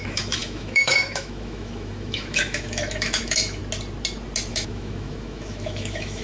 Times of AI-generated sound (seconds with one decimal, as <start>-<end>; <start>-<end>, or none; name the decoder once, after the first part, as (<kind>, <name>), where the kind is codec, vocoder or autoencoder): 0.0-3.6 (autoencoder, DAC-VAE); 4.5-6.2